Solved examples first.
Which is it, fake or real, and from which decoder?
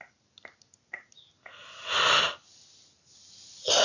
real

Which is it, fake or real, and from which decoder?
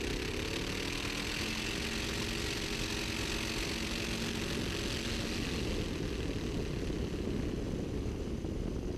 real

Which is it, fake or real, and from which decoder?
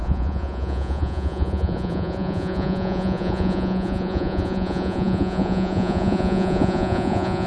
fake, vocoder, Vocos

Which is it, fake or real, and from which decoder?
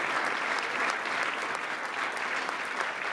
real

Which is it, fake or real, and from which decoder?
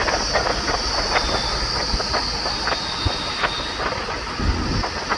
real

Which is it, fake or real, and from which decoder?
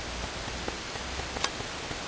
real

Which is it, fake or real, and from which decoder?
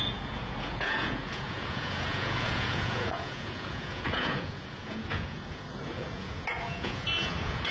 fake, vocoder, Vocos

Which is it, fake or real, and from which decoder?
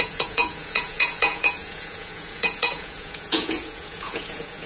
fake, vocoder, Vocos